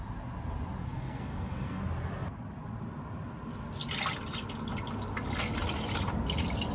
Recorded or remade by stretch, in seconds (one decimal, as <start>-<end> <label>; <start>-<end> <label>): 0.0-0.8 recorded; 0.8-1.8 remade; 1.8-6.7 recorded